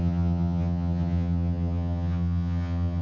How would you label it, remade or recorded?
remade